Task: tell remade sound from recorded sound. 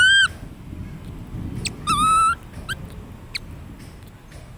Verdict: recorded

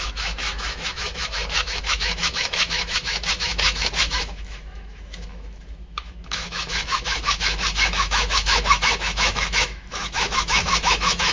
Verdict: remade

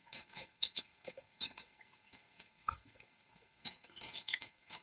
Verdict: remade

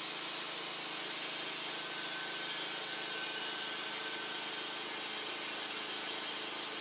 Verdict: recorded